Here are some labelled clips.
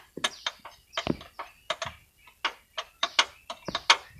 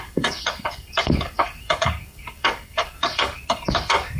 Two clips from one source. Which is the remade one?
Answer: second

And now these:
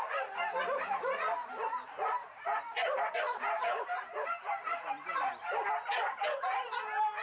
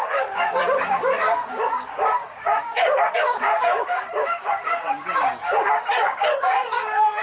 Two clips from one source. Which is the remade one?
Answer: second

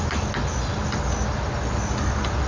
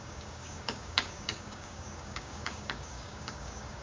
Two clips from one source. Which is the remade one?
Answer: second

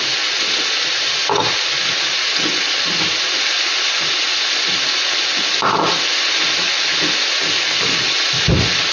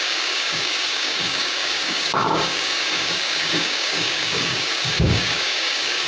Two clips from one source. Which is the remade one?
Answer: second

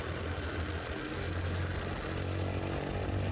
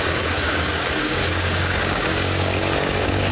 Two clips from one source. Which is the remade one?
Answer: second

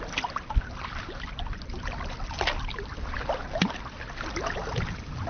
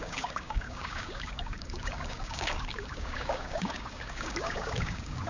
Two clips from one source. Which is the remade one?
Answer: second